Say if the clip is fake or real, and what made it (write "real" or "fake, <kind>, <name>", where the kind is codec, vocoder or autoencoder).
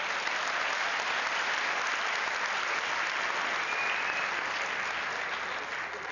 real